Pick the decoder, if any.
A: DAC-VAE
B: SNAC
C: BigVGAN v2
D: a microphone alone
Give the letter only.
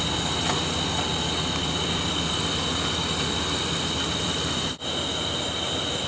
D